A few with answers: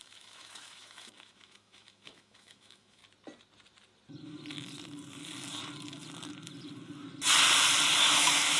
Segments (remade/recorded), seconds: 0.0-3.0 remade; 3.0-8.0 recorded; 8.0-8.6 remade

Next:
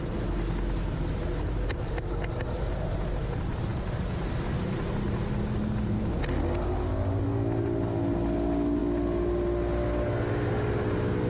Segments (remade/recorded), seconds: 0.0-11.3 recorded

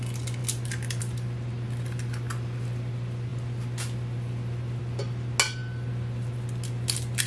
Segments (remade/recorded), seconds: 0.0-7.3 recorded

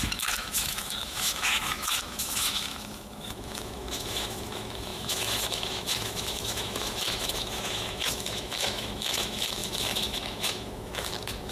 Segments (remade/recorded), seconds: 0.0-11.5 remade

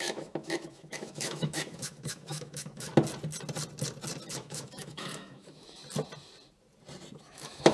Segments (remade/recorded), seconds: 0.0-2.9 remade; 2.9-4.3 recorded; 4.3-5.8 remade; 5.8-7.2 recorded; 7.2-7.7 remade